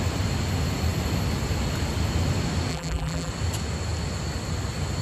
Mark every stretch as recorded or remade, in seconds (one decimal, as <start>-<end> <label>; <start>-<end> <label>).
0.0-2.7 recorded; 2.7-3.3 remade; 3.3-5.0 recorded